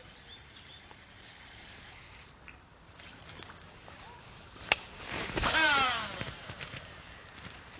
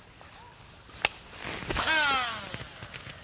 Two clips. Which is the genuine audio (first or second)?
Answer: second